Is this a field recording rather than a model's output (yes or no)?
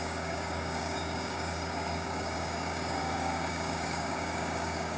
no